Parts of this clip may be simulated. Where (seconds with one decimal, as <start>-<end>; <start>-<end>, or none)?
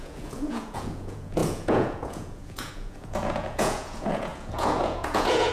0.0-5.5